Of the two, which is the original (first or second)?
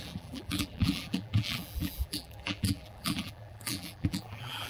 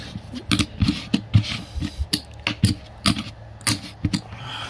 second